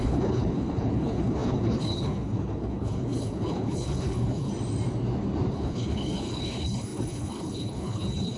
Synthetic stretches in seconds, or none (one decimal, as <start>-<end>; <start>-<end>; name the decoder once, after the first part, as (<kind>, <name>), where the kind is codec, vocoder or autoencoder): 0.0-4.5 (codec, HILCodec); 5.5-8.4